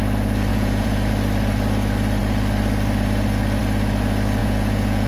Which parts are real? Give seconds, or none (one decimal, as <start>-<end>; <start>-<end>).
0.0-0.5; 1.1-4.4